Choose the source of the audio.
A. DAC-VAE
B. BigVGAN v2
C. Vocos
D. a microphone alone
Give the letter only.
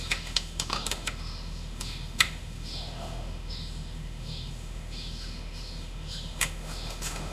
A